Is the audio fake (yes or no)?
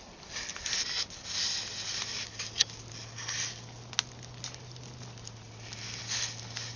no